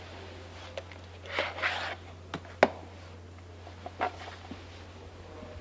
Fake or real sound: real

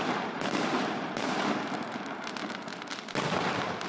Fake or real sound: real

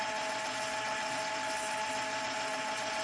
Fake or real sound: real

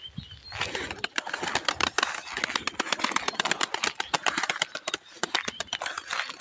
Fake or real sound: real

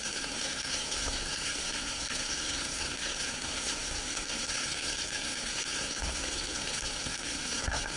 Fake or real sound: fake